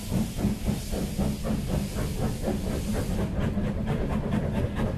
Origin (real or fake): real